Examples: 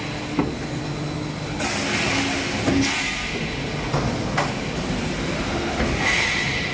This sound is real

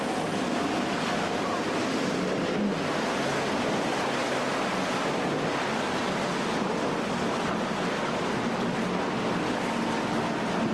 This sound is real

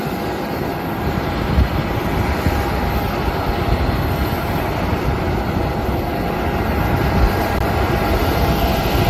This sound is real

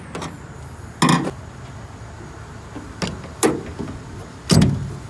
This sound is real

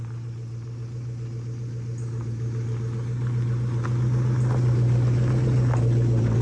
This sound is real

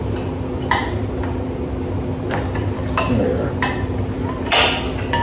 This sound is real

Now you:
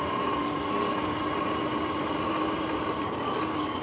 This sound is real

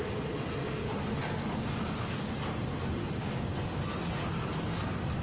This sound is real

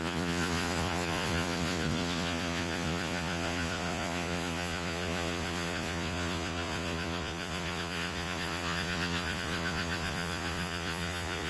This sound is fake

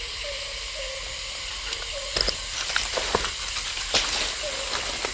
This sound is real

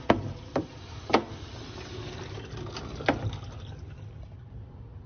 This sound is real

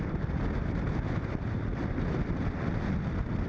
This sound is real